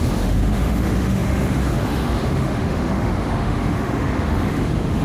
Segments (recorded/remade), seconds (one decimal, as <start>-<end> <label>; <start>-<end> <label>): 0.0-5.0 remade